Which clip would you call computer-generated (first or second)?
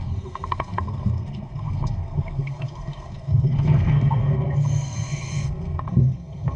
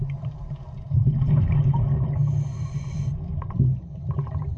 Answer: first